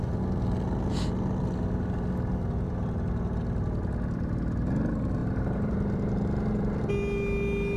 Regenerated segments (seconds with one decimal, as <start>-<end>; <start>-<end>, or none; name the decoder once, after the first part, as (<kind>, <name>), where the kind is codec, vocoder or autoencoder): 5.2-6.9 (vocoder, BigVGAN v2)